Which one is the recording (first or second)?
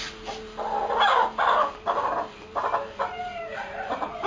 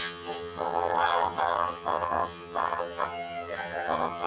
first